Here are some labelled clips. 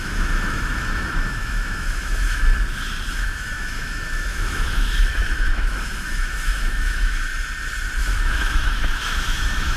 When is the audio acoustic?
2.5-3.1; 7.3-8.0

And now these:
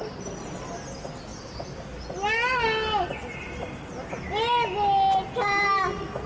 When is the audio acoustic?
0.0-6.3

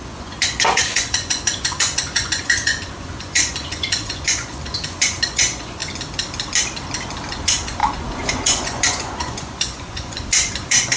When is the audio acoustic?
5.8-7.3

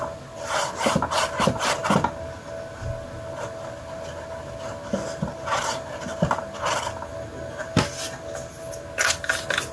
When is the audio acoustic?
0.0-9.7

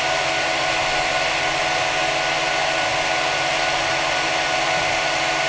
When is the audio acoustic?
0.0-5.5

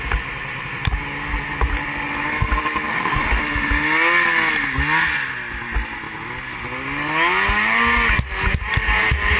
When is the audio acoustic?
0.0-2.9; 3.4-9.4

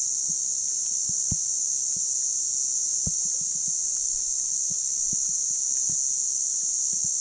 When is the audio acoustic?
0.0-7.2

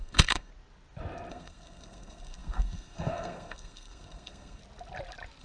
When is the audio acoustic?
0.5-1.3; 4.6-5.4